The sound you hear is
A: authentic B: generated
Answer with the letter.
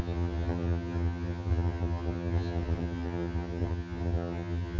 B